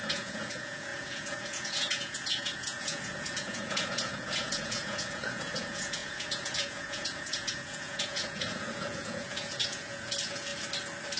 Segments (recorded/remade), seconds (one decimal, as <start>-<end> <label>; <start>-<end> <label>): 0.0-10.5 remade; 10.5-11.2 recorded